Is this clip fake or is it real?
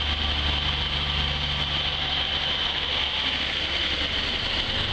real